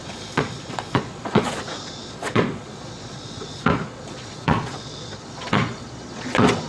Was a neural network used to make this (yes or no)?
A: yes